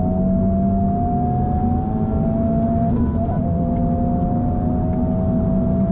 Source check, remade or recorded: recorded